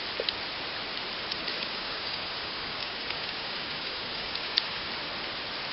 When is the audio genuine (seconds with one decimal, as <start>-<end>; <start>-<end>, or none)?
0.0-1.5; 4.9-5.7